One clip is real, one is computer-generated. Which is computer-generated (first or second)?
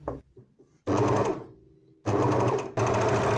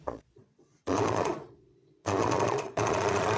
second